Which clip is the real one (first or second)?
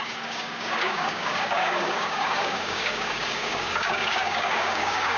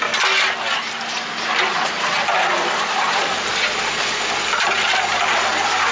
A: second